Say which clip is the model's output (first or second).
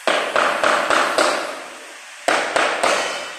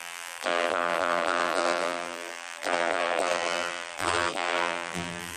second